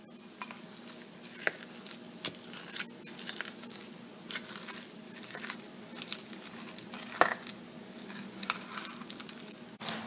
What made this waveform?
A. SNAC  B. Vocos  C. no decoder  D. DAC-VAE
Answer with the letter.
C